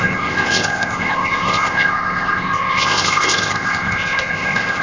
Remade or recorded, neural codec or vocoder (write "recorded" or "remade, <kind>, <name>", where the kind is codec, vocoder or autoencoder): remade, codec, ZipCodec